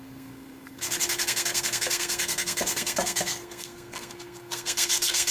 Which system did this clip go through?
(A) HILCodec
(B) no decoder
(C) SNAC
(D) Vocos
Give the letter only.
C